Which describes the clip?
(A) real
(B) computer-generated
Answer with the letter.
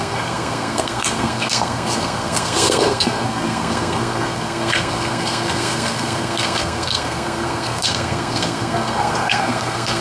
B